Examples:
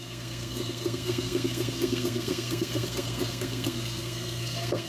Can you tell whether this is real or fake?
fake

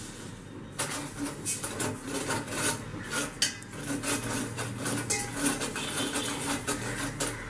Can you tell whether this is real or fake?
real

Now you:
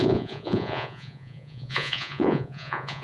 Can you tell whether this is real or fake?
fake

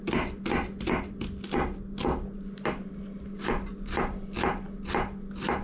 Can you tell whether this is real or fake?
real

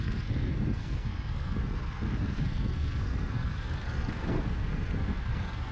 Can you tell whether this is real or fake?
fake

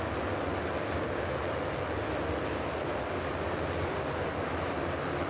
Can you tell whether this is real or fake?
real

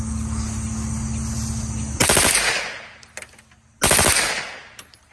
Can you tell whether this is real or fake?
real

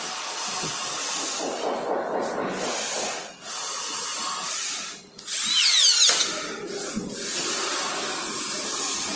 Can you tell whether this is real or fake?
real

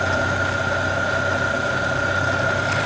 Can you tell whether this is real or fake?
real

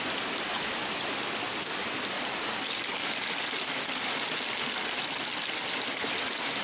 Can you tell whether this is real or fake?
real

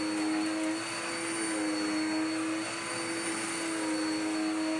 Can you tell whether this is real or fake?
real